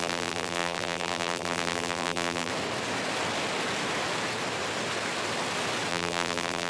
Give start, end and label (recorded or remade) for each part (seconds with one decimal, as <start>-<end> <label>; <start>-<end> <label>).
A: 0.0-2.5 remade; 2.5-5.9 recorded; 5.9-6.7 remade